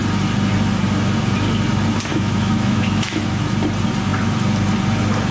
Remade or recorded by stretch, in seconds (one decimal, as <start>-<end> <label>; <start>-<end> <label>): 0.0-2.1 recorded; 2.1-3.5 remade; 3.5-5.3 recorded